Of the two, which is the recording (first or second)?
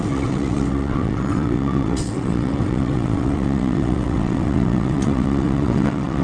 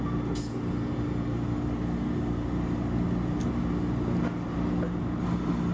second